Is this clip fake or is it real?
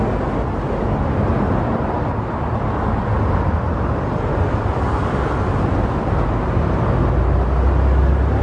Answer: real